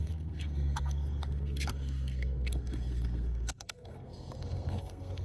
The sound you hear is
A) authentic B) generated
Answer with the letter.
B